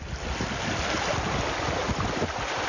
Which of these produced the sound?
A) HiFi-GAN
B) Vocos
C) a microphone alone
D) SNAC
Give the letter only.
C